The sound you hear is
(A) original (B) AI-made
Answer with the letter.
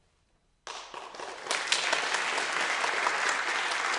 A